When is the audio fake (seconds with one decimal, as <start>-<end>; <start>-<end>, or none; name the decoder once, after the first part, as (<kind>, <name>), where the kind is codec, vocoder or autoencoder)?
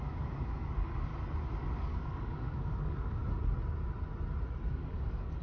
0.0-1.1 (codec, DAC); 1.7-3.2; 4.7-5.4